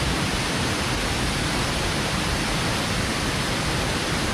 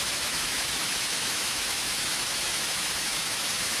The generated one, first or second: second